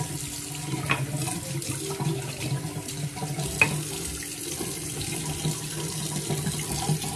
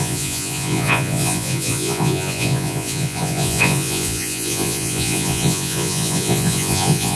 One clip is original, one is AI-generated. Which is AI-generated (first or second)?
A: second